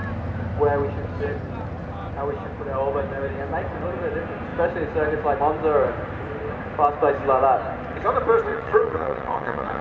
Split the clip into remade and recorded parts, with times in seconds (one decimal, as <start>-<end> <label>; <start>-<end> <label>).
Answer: 0.0-8.5 recorded; 8.5-9.8 remade